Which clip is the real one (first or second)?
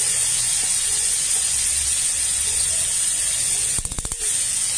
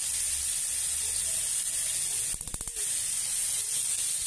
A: second